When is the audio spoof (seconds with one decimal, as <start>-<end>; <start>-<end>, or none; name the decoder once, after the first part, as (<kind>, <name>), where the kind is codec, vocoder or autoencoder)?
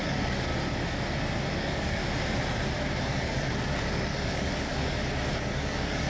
0.0-0.5 (codec, DAC); 1.5-2.0; 3.0-6.1